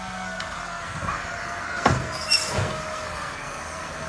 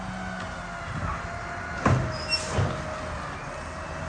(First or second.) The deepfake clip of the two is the first